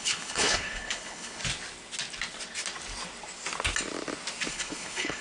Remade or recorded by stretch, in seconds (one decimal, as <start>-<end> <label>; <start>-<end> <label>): 0.0-1.4 remade; 1.4-4.5 recorded; 4.5-5.2 remade